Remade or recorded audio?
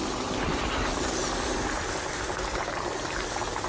recorded